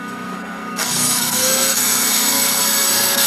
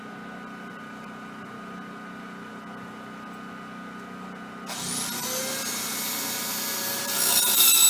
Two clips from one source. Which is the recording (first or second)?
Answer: second